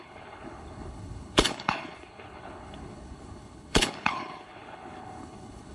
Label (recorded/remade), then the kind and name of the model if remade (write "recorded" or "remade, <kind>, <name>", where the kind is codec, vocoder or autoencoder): remade, codec, HILCodec